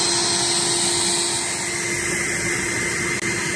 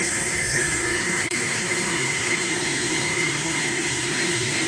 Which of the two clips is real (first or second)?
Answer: first